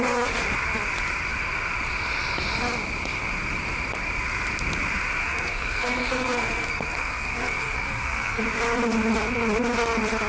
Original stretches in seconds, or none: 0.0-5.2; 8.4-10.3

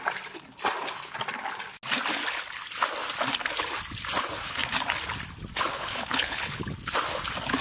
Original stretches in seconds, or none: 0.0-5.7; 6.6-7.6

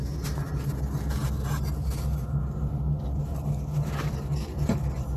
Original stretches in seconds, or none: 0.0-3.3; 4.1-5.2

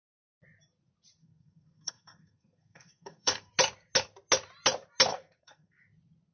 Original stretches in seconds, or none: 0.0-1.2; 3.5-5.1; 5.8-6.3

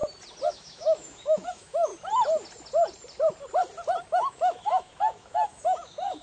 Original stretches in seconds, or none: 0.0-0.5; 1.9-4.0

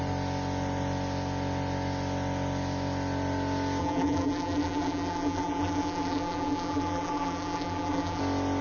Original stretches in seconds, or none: 0.0-3.8; 8.2-8.6